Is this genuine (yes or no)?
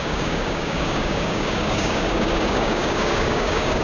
no